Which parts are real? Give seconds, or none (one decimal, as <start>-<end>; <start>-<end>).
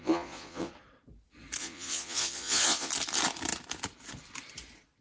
0.7-1.6; 2.9-5.0